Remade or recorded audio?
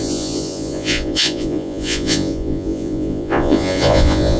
remade